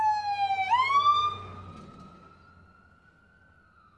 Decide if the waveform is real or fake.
real